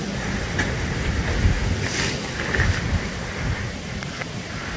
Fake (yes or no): no